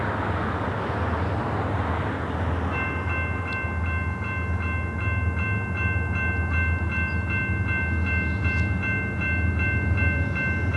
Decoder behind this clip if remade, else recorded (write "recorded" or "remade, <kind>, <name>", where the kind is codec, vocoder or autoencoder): recorded